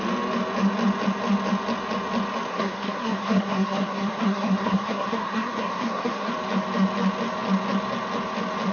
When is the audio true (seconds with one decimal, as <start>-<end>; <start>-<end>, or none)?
0.0-2.5; 6.3-8.7